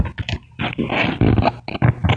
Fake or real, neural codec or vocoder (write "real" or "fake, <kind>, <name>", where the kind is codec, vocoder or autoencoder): real